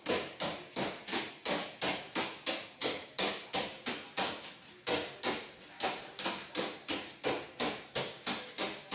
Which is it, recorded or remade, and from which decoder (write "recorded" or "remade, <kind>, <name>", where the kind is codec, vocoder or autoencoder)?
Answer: recorded